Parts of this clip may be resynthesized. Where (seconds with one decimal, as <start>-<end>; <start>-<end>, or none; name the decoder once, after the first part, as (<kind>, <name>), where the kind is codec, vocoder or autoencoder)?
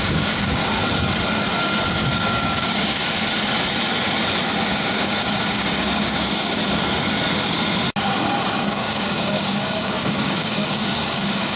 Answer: 0.0-0.6 (codec, DAC); 1.9-3.0; 4.7-6.6; 8.6-11.6